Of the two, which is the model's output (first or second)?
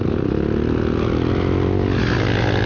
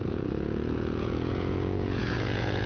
second